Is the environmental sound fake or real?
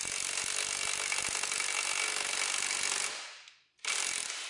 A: real